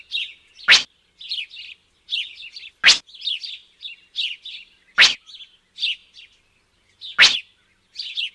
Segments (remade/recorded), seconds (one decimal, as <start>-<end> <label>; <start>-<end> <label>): 0.0-8.3 recorded